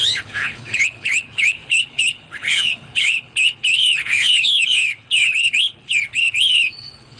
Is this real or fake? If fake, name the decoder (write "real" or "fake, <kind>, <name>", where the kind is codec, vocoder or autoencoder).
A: fake, codec, HILCodec